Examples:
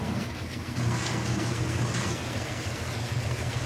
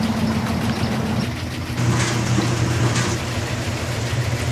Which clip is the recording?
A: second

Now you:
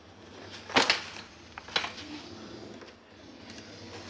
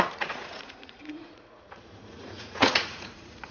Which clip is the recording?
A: first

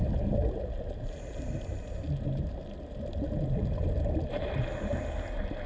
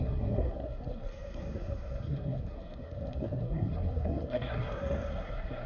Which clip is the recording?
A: first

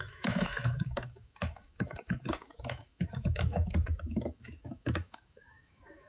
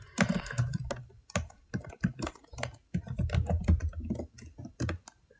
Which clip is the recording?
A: second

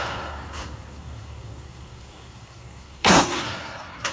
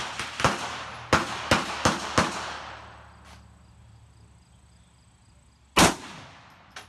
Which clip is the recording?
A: second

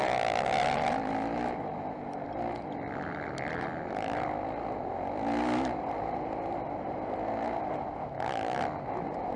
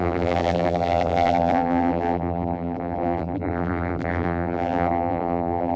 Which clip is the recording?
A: first